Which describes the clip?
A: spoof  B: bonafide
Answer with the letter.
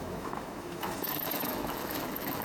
A